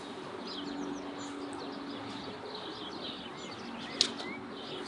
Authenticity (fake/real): real